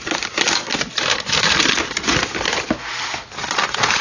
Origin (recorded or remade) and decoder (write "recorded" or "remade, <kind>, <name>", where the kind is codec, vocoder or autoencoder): recorded